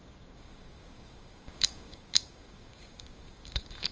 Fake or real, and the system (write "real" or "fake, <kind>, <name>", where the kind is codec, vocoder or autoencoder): fake, codec, DAC